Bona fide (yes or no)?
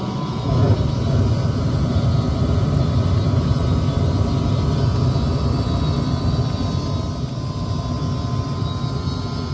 yes